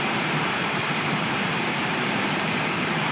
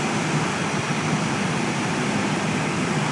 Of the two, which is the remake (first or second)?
first